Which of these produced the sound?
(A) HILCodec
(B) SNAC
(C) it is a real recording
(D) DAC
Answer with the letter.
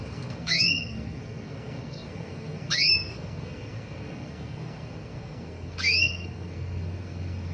B